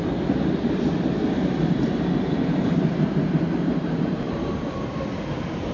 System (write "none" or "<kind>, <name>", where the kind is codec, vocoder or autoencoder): vocoder, BigVGAN v2